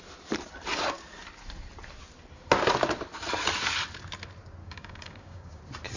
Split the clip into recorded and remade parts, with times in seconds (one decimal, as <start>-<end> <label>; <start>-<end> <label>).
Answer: 0.0-4.6 recorded; 4.6-5.6 remade; 5.6-6.0 recorded